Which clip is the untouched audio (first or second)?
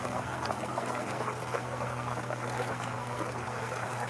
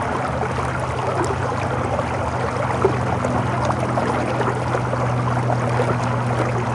second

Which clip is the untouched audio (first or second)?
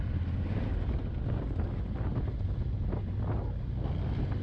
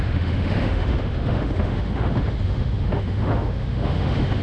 first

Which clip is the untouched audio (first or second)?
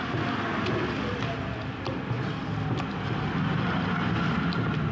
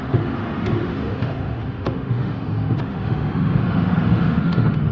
first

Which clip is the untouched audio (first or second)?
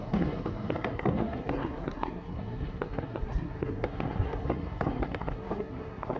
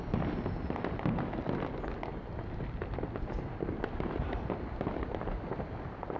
second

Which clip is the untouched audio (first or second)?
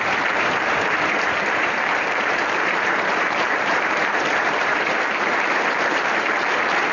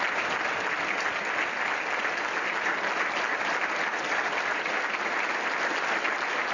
second